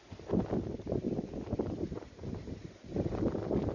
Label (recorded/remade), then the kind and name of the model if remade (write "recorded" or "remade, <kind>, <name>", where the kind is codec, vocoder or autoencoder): recorded